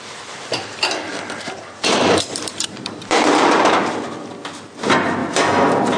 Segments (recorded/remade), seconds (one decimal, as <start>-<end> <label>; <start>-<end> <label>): 0.0-1.1 recorded; 1.1-4.0 remade; 4.0-6.0 recorded